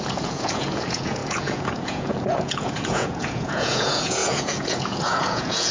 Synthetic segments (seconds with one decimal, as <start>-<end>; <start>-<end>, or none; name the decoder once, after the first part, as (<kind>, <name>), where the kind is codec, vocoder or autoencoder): 0.0-5.7 (vocoder, Vocos)